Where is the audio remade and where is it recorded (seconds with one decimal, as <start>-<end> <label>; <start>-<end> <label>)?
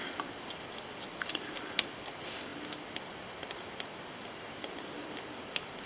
0.0-5.9 recorded